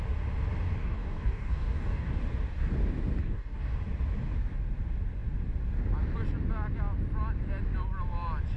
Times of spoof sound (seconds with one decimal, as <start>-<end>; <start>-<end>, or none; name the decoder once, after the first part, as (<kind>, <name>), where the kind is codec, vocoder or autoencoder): 0.8-2.2 (codec, DAC); 3.2-3.7